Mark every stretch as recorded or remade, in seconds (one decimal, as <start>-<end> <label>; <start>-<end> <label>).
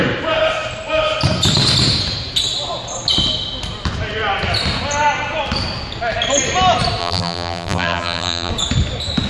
0.0-7.0 recorded; 7.0-8.5 remade; 8.5-9.3 recorded